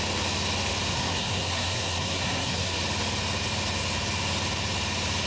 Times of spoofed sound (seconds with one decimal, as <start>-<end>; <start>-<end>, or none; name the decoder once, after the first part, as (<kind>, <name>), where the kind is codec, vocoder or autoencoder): 0.9-2.8 (codec, SNAC)